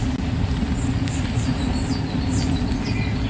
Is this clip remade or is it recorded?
recorded